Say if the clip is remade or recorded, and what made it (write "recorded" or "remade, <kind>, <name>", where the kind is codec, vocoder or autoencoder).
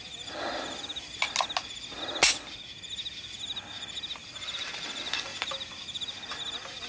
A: recorded